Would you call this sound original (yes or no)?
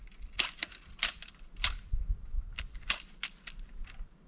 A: yes